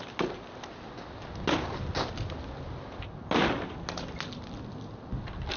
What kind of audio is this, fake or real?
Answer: real